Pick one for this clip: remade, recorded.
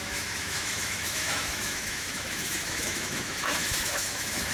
remade